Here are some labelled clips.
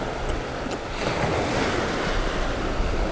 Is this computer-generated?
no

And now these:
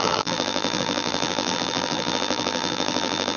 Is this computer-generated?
yes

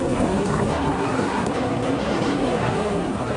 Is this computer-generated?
yes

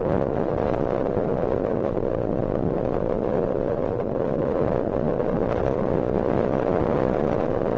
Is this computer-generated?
yes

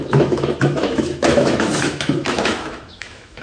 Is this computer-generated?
yes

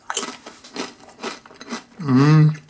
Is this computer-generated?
no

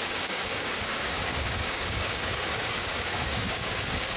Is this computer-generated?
yes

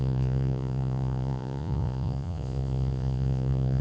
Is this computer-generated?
yes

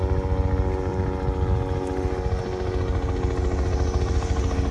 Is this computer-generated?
no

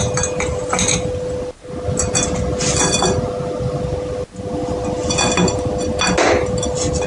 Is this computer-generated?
no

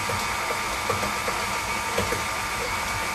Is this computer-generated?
no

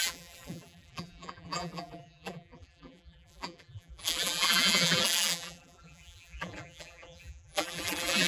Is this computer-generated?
yes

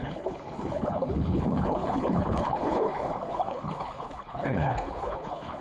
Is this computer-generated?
yes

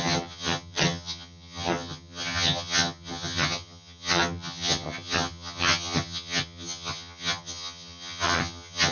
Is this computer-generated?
yes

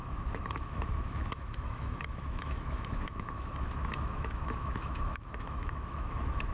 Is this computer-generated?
yes